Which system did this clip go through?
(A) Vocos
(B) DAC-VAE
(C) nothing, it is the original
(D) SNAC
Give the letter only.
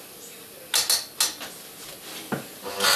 C